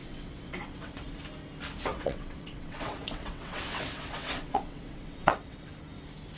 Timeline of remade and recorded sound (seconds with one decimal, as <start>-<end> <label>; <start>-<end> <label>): 0.0-1.2 remade; 1.2-1.9 recorded; 1.9-5.7 remade; 5.7-6.4 recorded